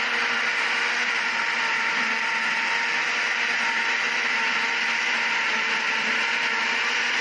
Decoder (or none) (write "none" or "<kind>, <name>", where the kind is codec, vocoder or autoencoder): none